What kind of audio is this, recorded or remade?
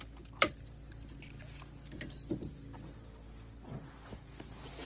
recorded